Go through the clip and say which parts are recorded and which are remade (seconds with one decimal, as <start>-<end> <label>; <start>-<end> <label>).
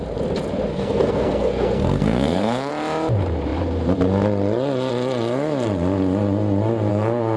0.0-0.7 recorded; 0.7-2.7 remade; 2.7-6.9 recorded; 6.9-7.4 remade